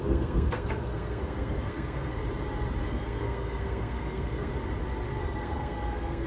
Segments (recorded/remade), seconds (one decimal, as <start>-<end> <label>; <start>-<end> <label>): 0.0-2.2 remade; 2.2-2.8 recorded; 2.8-4.5 remade; 4.5-5.2 recorded; 5.2-6.3 remade